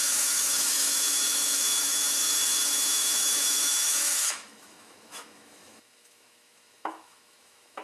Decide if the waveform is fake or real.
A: fake